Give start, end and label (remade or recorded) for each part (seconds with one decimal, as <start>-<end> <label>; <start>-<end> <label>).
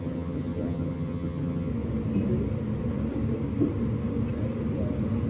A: 0.0-1.7 remade; 1.7-5.3 recorded